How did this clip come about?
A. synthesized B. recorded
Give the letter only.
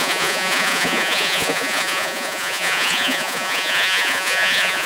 A